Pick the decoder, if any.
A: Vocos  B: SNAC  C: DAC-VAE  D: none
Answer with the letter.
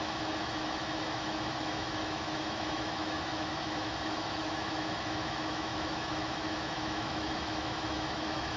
C